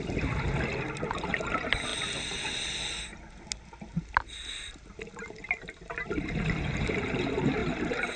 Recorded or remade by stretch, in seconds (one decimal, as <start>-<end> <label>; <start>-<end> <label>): 0.0-8.2 recorded